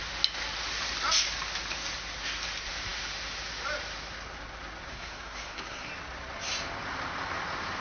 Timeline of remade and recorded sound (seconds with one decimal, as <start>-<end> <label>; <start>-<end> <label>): 0.0-4.9 recorded; 4.9-5.9 remade; 5.9-7.8 recorded